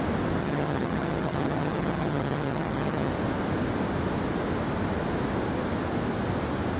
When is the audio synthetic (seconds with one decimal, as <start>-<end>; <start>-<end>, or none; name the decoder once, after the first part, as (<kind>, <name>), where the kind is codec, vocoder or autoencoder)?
0.4-3.1 (vocoder, HiFi-GAN)